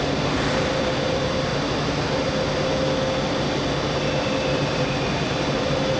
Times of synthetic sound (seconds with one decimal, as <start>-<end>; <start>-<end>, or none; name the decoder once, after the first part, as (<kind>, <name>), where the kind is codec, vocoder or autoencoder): 0.0-1.5 (vocoder, BigVGAN v2); 4.5-6.0